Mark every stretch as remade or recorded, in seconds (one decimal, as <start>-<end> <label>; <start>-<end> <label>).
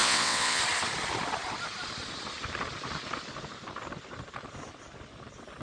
0.0-0.6 remade; 0.6-5.6 recorded